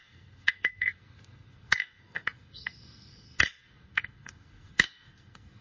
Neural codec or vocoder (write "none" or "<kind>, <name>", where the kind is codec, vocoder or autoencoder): codec, SNAC